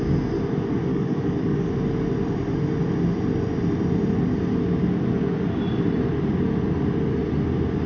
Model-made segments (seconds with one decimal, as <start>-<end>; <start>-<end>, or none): 0.9-1.7

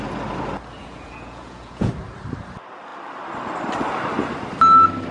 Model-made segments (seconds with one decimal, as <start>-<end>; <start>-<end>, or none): 0.8-1.9